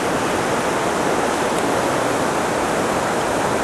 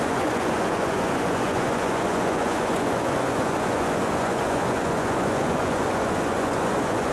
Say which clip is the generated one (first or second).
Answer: second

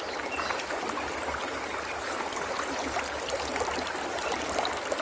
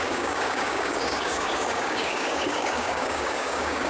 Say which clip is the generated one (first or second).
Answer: second